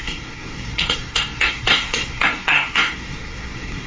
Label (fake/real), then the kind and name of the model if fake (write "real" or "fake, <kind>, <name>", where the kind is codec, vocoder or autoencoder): fake, codec, SNAC